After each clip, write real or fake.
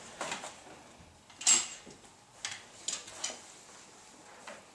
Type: real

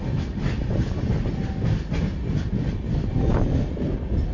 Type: real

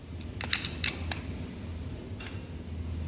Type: real